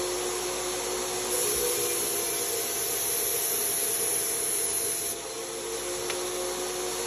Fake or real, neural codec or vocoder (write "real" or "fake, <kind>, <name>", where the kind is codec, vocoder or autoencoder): real